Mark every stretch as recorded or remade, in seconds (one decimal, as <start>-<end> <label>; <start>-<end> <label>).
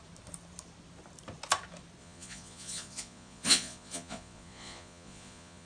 0.0-2.0 recorded; 2.0-5.7 remade